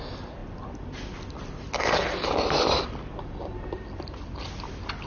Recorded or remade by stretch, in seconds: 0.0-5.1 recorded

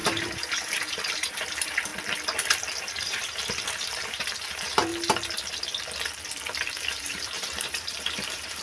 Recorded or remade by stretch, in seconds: 0.0-1.9 remade; 1.9-2.8 recorded; 2.8-4.9 remade; 4.9-7.0 recorded; 7.0-8.6 remade

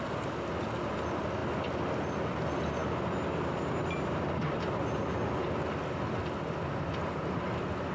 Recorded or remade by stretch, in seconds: 0.0-7.9 recorded